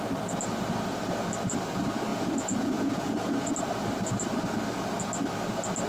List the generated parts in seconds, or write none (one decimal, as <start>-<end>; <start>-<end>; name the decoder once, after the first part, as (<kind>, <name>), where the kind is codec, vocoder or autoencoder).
2.1-3.5 (vocoder, Vocos)

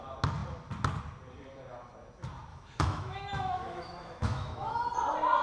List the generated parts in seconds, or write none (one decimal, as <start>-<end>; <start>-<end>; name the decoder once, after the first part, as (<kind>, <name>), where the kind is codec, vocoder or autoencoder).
2.5-4.9 (autoencoder, DAC-VAE)

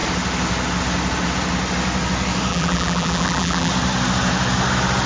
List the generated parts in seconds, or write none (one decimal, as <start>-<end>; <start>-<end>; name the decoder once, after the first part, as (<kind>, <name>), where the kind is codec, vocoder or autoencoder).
2.5-3.7 (vocoder, BigVGAN v2)

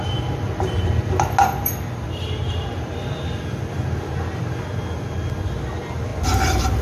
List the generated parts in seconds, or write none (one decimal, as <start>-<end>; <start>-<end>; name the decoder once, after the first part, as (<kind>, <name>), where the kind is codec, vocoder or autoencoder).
none

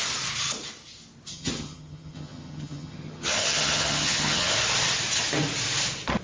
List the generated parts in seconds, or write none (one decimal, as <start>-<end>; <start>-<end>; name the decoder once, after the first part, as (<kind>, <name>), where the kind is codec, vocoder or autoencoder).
1.3-4.5 (vocoder, HiFi-GAN)